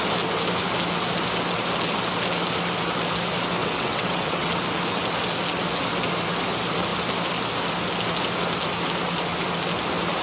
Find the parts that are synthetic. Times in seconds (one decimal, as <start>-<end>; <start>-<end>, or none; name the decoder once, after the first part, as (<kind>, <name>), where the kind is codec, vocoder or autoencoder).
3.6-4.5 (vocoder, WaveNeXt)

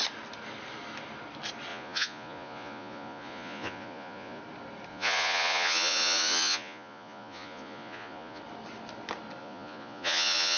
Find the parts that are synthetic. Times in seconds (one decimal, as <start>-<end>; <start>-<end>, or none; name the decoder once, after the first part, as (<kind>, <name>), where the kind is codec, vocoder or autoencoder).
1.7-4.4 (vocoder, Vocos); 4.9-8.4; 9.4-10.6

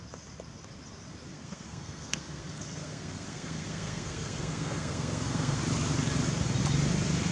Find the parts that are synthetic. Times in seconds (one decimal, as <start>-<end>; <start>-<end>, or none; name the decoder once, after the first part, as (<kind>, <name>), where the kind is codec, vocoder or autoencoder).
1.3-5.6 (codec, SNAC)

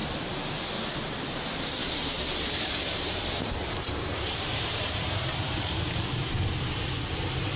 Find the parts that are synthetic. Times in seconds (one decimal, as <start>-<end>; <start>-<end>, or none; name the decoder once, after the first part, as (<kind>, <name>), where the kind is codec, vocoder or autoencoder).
1.8-6.4 (vocoder, BigVGAN v2)

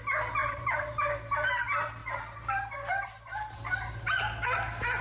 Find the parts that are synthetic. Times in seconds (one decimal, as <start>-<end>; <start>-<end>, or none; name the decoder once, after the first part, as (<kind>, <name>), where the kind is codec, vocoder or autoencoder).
0.4-1.1 (vocoder, BigVGAN v2)

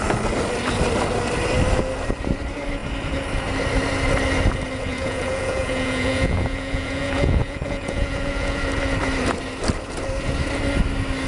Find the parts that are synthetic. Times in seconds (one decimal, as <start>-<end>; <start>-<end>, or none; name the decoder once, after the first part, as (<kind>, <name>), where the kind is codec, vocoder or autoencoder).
4.9-8.6 (vocoder, Vocos)

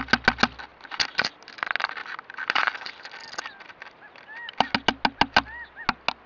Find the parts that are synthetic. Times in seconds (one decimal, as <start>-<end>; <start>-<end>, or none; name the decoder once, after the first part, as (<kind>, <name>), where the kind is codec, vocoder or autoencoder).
none